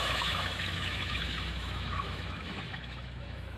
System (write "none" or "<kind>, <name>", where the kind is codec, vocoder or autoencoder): autoencoder, DAC-VAE